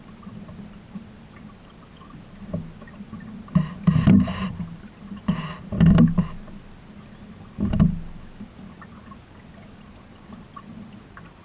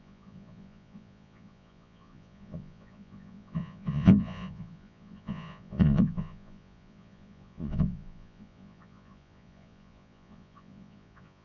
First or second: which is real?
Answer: first